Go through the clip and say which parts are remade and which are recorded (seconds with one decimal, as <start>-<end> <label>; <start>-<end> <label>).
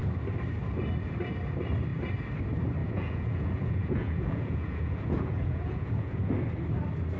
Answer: 0.0-2.8 recorded; 2.8-6.3 remade; 6.3-7.2 recorded